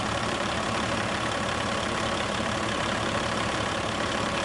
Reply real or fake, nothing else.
fake